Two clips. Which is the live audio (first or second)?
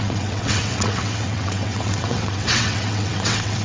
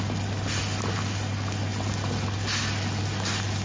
second